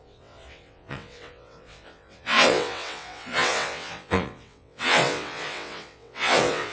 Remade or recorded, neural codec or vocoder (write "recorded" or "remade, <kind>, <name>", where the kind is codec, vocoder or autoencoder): remade, vocoder, WaveNeXt